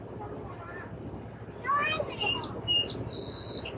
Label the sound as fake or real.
real